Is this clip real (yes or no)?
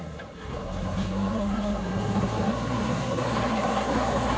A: no